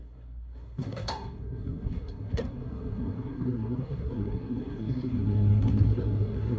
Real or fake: fake